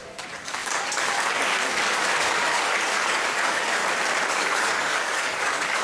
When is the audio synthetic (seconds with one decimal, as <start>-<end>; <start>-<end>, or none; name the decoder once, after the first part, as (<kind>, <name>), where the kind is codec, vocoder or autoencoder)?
0.0-3.8 (codec, DAC); 4.3-5.8